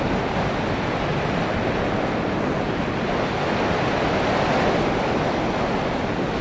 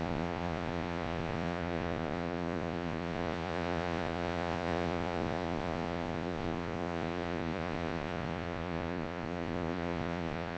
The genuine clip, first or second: first